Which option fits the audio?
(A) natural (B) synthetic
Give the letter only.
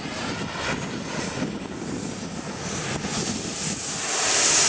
A